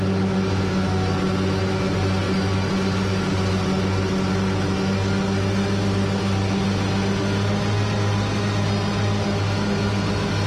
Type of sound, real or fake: real